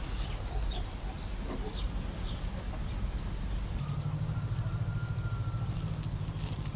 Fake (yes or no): no